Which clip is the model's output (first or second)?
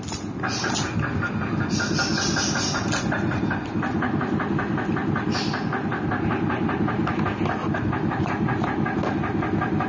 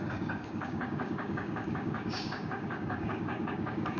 second